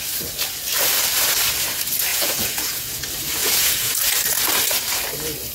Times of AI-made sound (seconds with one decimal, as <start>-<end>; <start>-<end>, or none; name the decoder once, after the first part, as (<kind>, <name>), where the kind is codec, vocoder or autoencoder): 2.1-3.0 (vocoder, Vocos); 3.4-4.0